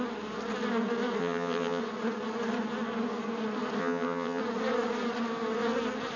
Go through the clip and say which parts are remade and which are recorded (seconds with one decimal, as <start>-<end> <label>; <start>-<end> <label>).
0.0-1.2 recorded; 1.2-1.8 remade; 1.8-3.8 recorded; 3.8-4.4 remade; 4.4-6.2 recorded